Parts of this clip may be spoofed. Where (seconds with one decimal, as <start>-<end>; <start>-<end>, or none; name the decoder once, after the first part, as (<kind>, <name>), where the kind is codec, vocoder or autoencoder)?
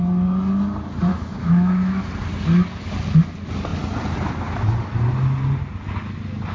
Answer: 1.1-2.0 (autoencoder, DAC-VAE)